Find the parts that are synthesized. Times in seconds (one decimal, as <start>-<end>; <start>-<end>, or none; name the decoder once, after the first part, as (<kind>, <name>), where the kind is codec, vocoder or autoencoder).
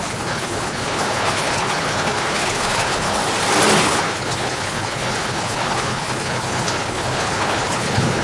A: 0.0-3.2 (codec, HILCodec); 3.8-8.2